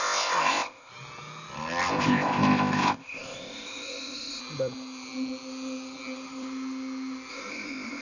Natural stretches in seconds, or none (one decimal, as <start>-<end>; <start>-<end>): 0.9-1.9; 4.4-7.3